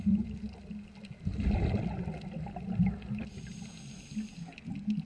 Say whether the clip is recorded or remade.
recorded